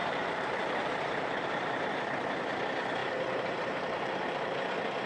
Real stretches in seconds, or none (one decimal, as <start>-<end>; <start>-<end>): 1.9-3.0; 4.6-5.1

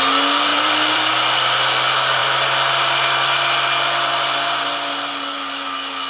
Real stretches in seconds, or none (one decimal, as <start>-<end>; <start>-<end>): 0.0-0.5; 1.1-6.1

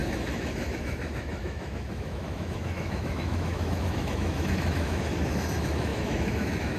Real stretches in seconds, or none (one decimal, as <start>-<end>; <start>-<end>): none

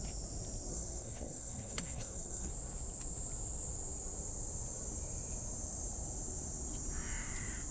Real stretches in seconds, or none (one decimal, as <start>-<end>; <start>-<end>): 0.0-0.7; 2.5-7.7

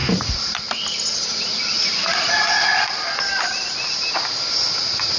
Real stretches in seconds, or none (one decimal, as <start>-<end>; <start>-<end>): 0.7-2.7; 4.1-5.2

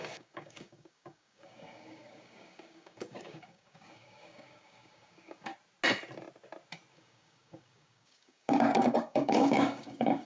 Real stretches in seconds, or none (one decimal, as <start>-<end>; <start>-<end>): 5.5-6.9

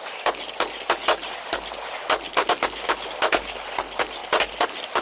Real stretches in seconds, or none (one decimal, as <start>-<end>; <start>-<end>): 0.0-5.0

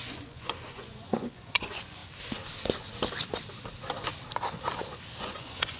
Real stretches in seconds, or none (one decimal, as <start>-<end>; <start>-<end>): 2.0-5.2